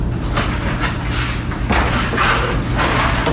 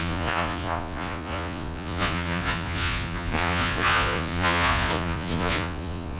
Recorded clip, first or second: first